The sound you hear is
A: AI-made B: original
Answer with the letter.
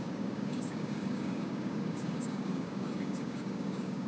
A